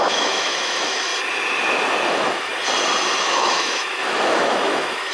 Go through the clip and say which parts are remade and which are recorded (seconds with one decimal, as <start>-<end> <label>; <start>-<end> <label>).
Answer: 0.0-1.1 remade; 1.1-2.1 recorded; 2.1-2.5 remade; 2.5-3.2 recorded; 3.2-5.1 remade